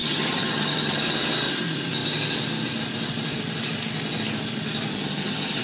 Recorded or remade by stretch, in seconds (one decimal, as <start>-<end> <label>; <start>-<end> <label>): 0.0-1.0 remade; 1.0-4.9 recorded; 4.9-5.6 remade